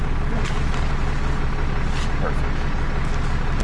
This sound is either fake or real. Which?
real